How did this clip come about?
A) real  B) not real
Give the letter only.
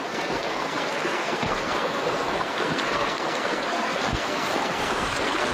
B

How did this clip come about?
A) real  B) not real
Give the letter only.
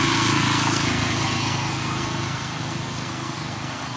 B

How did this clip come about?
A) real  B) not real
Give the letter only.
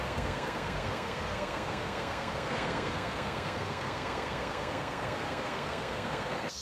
B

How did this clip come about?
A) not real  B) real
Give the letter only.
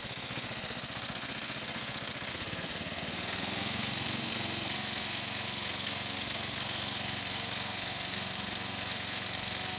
A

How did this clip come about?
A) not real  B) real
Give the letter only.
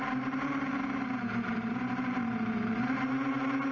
B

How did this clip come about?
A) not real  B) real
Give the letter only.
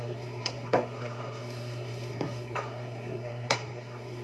A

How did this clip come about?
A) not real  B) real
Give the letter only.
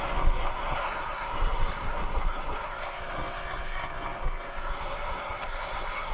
A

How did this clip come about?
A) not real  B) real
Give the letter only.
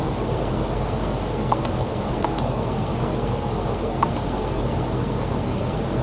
A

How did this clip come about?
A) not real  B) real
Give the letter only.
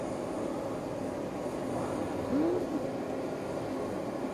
B